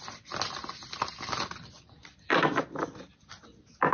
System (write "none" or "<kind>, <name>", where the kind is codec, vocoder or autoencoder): none